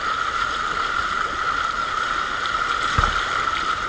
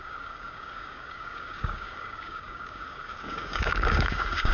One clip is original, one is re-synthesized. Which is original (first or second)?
first